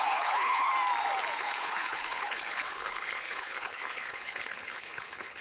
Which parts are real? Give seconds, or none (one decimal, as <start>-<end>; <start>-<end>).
0.7-1.4